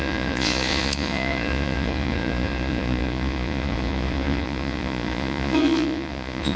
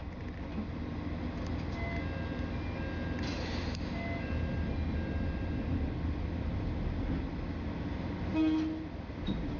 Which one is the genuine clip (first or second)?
second